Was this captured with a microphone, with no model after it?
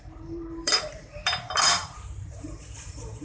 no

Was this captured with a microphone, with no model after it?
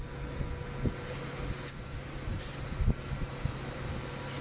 yes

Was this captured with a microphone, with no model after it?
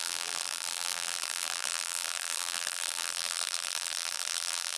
no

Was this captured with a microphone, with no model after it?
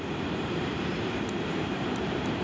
no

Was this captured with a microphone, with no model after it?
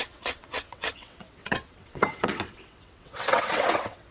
no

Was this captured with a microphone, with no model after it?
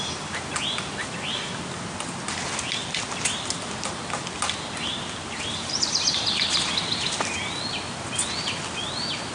yes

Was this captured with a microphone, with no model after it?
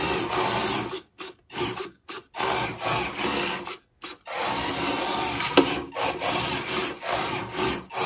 yes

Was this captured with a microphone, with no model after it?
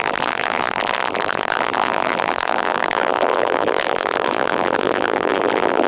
no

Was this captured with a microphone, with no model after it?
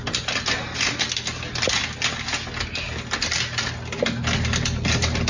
yes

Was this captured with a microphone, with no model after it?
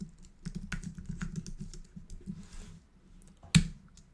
yes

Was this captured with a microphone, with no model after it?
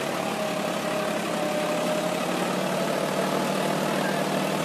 yes